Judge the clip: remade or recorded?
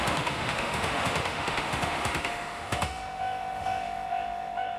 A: remade